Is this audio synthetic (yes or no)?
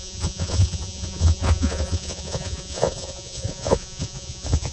yes